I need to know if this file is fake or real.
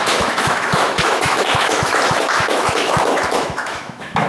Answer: fake